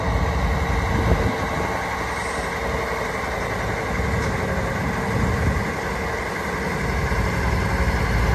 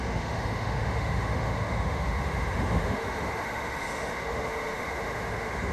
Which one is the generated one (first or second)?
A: second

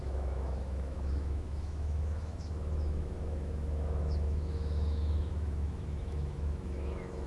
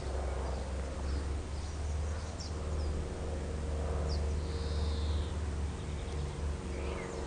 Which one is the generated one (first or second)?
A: first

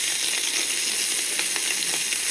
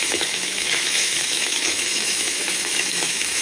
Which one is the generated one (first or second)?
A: second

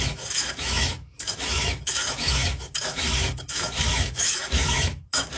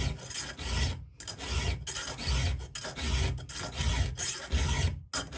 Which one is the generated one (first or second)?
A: first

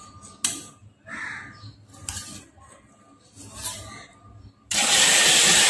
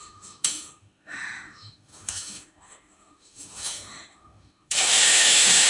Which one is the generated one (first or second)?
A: second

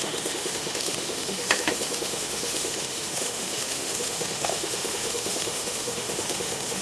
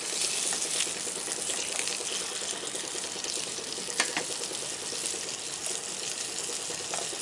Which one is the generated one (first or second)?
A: first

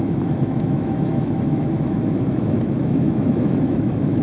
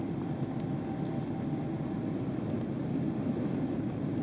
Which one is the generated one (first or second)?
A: first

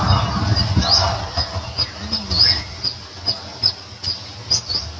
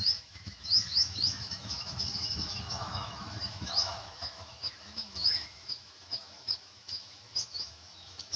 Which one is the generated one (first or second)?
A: second